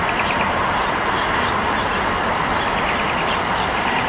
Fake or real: real